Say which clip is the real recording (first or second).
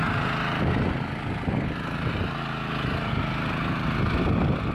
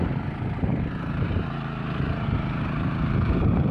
first